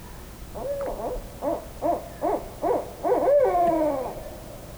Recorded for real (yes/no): yes